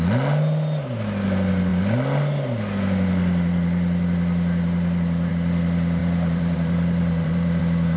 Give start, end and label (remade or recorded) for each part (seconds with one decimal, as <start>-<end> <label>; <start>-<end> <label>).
0.0-6.0 recorded; 6.0-7.6 remade; 7.6-8.0 recorded